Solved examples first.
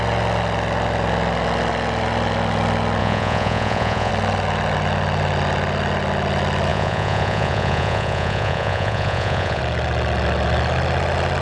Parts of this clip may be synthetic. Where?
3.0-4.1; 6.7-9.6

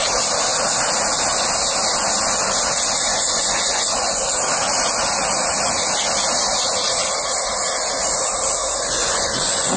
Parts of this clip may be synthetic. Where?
3.1-4.2; 8.6-9.8